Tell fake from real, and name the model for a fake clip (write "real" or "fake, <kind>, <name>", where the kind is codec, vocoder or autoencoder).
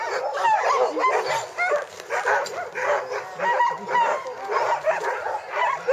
real